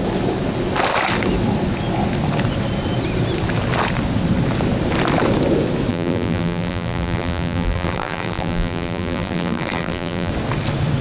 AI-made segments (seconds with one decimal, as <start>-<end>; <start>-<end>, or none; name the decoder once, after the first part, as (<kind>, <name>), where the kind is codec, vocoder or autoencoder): 5.9-10.3 (vocoder, BigVGAN v2)